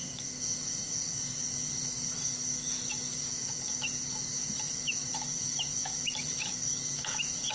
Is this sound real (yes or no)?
no